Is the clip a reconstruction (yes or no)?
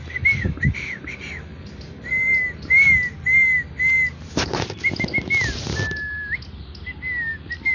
no